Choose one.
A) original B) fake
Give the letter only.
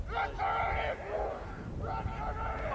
A